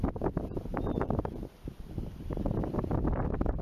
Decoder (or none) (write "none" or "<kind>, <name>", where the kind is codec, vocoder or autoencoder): vocoder, BigVGAN v2